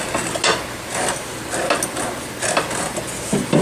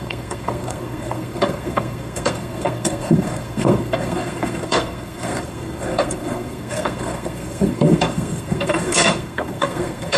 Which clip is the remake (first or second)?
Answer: second